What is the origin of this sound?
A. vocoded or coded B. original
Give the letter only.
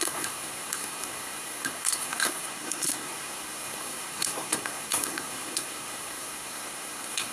A